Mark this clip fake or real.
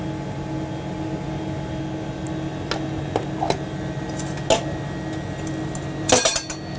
real